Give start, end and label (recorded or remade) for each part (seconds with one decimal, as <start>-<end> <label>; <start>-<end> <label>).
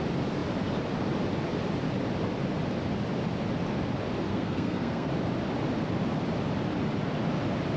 0.0-4.3 recorded; 4.3-5.1 remade; 5.1-7.8 recorded